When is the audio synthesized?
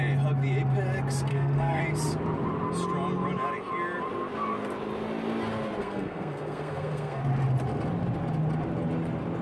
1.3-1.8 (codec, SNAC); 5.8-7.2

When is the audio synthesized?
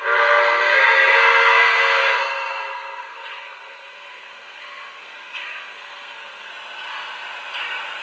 0.0-2.0 (codec, SNAC); 2.5-6.5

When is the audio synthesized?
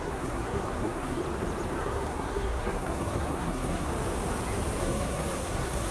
0.0-1.2 (codec, SNAC); 1.8-3.9; 4.8-5.9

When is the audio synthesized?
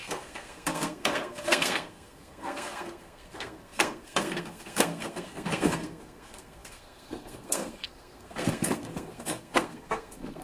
0.0-10.4 (codec, SNAC)